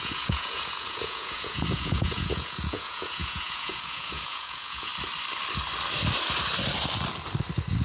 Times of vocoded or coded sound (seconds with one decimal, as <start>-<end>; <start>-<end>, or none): 0.0-4.9